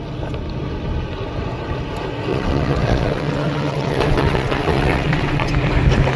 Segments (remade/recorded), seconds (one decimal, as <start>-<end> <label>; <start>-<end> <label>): 0.0-2.3 recorded; 2.3-5.5 remade; 5.5-6.2 recorded